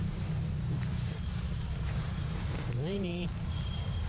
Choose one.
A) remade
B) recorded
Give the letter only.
A